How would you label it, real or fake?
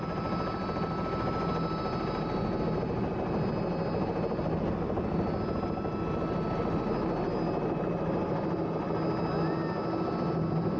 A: real